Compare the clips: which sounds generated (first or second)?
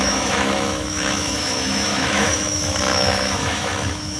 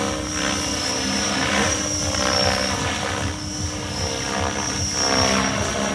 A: first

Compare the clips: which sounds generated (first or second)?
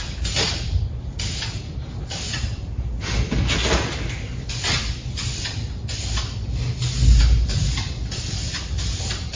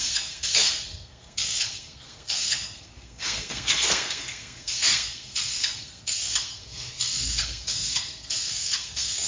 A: second